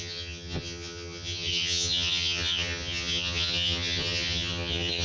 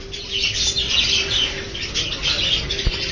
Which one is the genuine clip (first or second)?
second